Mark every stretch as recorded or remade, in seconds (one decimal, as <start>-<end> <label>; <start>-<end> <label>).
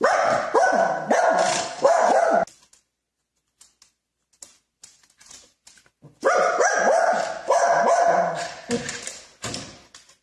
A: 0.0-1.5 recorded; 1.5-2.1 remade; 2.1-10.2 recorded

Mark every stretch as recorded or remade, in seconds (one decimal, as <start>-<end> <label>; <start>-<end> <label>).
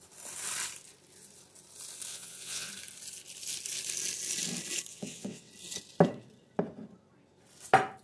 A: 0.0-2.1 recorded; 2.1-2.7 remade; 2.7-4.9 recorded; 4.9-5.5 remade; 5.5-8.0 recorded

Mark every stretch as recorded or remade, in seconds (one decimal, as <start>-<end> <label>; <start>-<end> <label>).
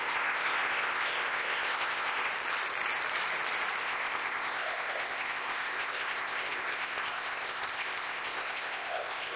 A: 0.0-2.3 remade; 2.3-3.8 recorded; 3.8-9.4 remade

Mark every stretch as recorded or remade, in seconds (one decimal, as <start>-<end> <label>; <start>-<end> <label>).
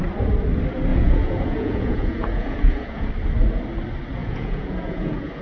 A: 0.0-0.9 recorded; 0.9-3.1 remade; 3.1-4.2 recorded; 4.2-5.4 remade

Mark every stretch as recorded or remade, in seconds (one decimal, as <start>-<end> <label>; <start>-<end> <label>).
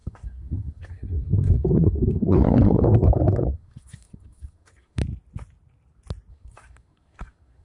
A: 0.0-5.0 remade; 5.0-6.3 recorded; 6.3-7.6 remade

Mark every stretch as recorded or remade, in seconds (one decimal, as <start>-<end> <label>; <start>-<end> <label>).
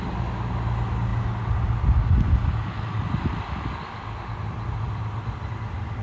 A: 0.0-6.0 recorded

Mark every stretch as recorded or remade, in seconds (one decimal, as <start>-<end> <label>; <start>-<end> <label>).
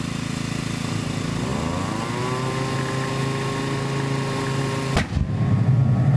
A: 0.0-6.2 recorded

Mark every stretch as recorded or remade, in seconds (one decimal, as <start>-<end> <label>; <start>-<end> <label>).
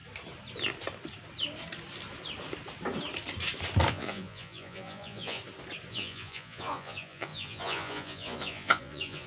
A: 0.0-3.9 recorded; 3.9-5.4 remade; 5.4-5.9 recorded; 5.9-9.3 remade